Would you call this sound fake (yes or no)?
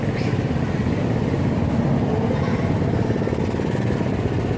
no